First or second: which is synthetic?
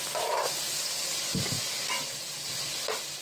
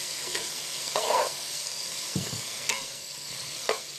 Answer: second